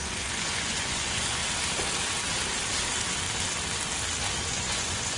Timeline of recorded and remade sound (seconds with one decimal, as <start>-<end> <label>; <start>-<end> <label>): 0.0-1.4 remade; 1.4-4.5 recorded; 4.5-5.2 remade